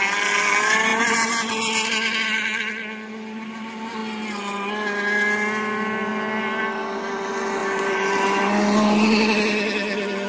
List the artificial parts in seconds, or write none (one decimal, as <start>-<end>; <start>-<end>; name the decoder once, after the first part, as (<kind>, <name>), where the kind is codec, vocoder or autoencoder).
0.9-1.5 (vocoder, BigVGAN v2); 7.6-8.1